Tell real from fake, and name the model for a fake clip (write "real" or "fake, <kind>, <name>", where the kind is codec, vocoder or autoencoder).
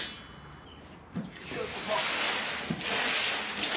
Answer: real